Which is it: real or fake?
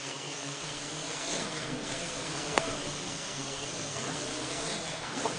fake